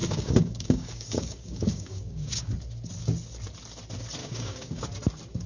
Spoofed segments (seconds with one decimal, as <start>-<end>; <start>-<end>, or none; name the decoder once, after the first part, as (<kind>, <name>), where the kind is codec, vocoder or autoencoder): 0.0-2.5 (codec, DAC); 4.2-4.8